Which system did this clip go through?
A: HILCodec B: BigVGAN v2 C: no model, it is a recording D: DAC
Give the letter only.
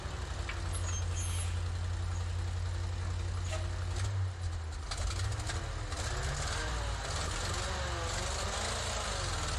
C